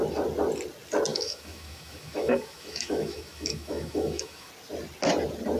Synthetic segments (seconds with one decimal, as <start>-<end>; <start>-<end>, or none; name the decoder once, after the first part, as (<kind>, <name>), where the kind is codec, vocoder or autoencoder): 1.1-4.5 (autoencoder, DAC-VAE)